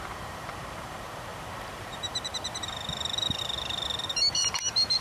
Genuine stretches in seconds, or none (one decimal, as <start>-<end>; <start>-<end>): none